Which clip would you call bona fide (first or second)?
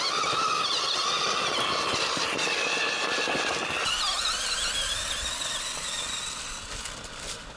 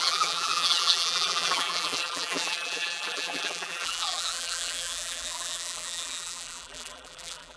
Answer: first